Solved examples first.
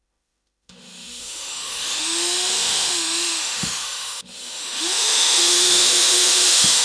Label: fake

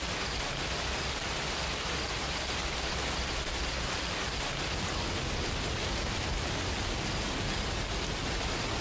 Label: real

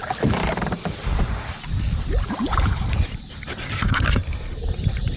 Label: fake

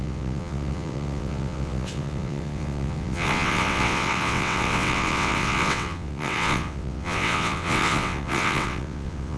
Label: fake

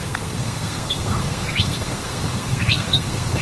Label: fake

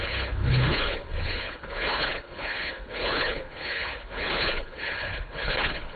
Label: fake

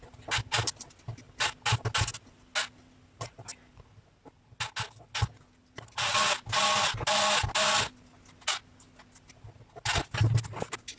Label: real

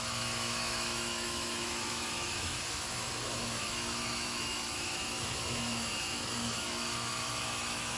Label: fake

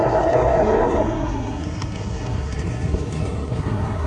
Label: fake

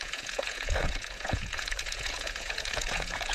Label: fake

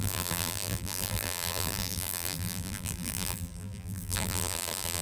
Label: fake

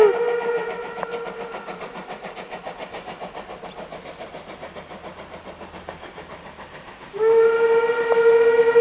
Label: real